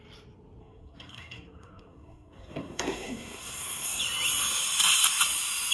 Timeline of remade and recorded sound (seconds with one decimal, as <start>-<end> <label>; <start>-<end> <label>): 0.0-0.6 recorded; 0.6-4.0 remade; 4.0-5.7 recorded